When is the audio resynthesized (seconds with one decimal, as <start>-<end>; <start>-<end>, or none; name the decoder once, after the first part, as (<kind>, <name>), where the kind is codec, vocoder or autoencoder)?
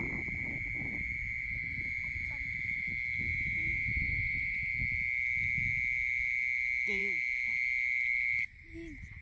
3.3-4.7 (vocoder, Vocos)